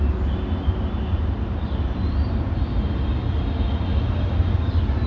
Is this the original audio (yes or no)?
yes